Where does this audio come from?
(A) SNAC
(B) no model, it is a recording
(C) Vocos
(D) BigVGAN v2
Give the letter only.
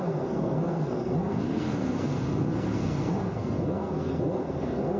A